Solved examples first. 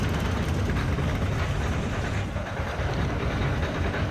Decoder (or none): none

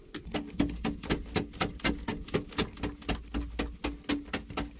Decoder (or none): none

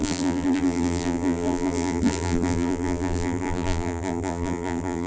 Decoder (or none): vocoder, BigVGAN v2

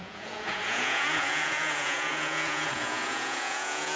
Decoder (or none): vocoder, Vocos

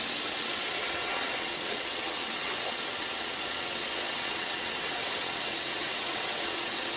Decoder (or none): vocoder, WaveNeXt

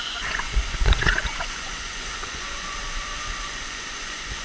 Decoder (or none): vocoder, Vocos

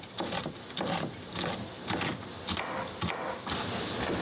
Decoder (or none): none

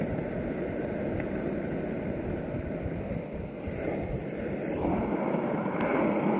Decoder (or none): none